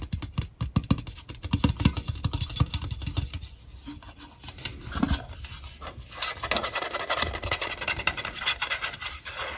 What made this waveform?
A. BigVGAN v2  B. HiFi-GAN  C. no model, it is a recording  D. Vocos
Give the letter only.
C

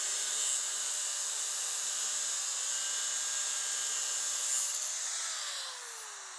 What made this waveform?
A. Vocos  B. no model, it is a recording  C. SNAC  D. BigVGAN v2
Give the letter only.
B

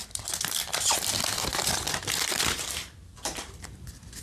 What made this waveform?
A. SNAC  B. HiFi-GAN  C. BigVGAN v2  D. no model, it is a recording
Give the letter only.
C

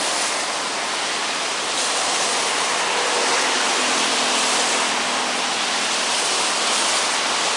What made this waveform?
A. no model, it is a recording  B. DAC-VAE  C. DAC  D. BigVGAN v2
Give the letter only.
A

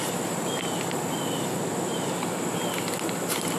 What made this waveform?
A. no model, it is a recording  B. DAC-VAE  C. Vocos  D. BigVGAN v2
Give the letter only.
A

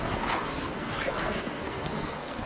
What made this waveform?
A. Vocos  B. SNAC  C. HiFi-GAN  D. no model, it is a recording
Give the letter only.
B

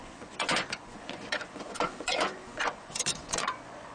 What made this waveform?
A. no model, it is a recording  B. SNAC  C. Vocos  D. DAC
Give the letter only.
C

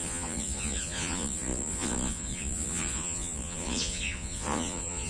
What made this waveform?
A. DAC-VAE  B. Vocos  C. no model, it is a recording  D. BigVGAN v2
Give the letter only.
B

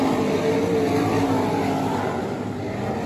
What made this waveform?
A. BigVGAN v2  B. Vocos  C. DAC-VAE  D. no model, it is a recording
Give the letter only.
D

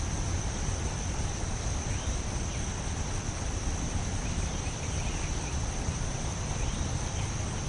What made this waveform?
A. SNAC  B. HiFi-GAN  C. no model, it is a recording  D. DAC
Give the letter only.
C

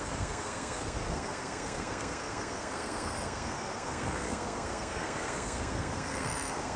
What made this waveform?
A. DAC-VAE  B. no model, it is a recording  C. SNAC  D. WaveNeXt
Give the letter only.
C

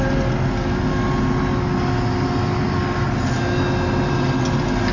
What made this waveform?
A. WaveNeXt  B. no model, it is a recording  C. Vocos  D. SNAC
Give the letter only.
B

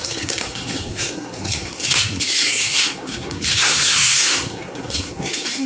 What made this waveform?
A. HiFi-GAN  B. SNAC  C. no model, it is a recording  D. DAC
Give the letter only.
B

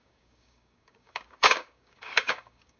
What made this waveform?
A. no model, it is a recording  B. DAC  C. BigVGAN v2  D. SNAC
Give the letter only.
B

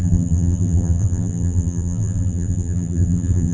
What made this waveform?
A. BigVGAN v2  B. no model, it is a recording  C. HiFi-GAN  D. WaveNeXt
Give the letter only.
A